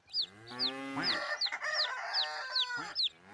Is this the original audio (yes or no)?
yes